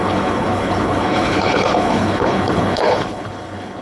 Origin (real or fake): fake